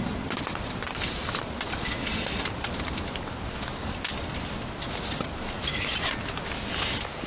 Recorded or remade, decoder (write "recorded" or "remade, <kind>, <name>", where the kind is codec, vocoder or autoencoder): recorded